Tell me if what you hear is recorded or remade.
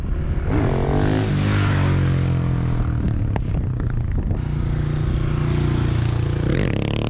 recorded